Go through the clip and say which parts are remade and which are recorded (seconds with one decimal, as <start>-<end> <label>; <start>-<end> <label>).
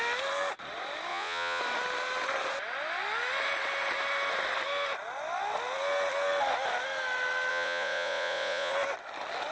0.0-1.1 recorded; 1.1-1.6 remade; 1.6-7.5 recorded; 7.5-8.7 remade; 8.7-9.5 recorded